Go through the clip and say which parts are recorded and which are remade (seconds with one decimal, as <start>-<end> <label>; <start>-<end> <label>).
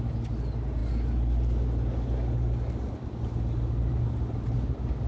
0.0-5.1 recorded